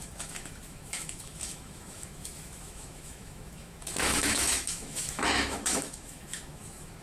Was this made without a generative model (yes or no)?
no